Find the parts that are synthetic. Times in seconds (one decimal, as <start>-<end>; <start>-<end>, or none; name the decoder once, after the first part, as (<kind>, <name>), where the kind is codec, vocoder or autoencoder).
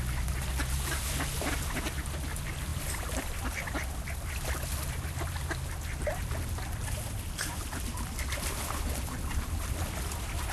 2.7-4.0 (vocoder, BigVGAN v2)